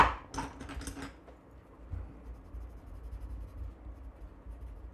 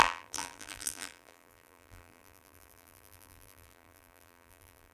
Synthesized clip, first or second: second